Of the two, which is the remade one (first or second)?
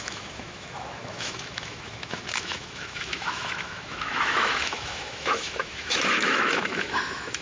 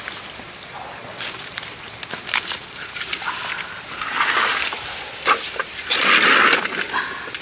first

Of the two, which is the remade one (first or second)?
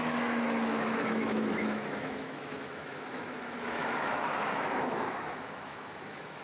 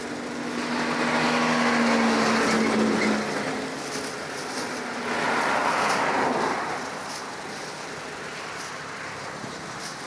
first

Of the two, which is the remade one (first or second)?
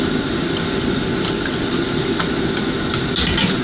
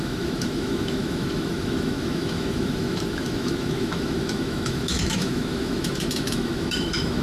second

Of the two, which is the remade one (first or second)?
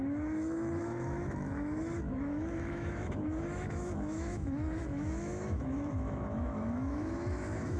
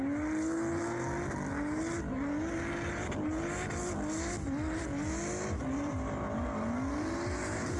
first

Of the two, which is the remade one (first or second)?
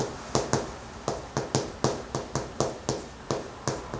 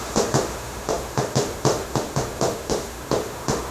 second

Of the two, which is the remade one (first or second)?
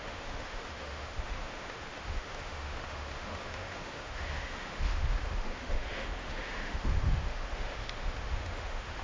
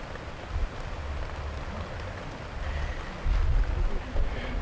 first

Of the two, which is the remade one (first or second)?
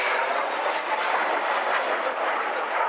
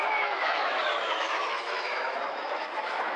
second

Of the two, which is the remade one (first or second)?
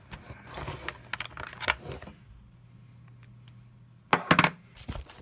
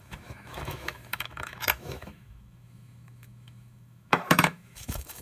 second